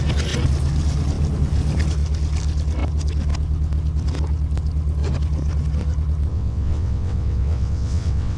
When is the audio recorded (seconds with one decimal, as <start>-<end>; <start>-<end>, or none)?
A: 0.0-6.3